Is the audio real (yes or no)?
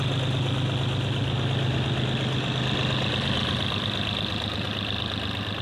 yes